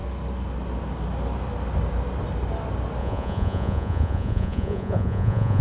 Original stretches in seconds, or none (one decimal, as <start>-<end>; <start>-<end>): 0.0-3.0